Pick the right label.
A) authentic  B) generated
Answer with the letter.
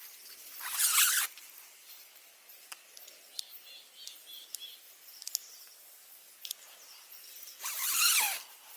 A